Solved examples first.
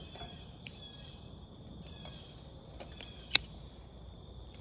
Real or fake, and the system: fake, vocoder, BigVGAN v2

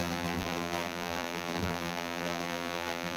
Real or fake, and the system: fake, vocoder, BigVGAN v2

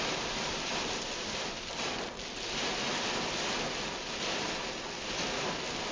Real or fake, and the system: real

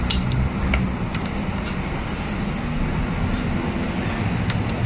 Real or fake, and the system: real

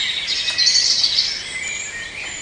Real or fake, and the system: real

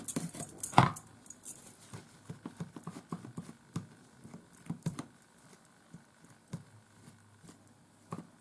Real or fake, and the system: real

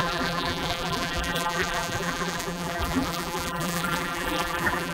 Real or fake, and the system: fake, vocoder, BigVGAN v2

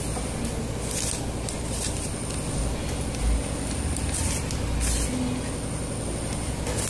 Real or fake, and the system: real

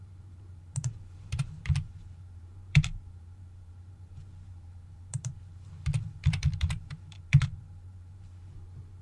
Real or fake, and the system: fake, vocoder, BigVGAN v2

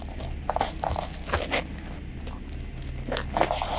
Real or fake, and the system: real